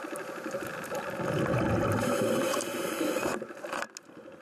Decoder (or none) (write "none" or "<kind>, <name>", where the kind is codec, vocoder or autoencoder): none